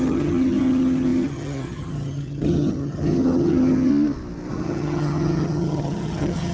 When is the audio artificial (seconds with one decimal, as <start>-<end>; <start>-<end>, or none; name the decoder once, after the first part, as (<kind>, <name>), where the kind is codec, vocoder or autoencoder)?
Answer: 0.0-3.9 (vocoder, HiFi-GAN); 4.5-6.5